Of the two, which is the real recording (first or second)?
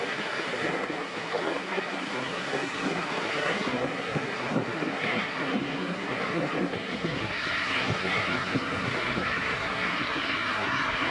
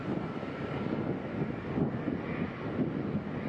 second